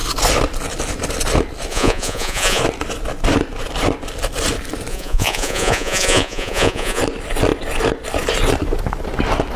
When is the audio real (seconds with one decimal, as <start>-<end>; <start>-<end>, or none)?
0.0-1.7; 2.6-4.9; 7.0-9.6